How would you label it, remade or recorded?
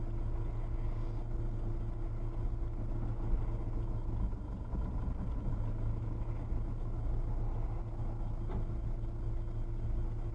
recorded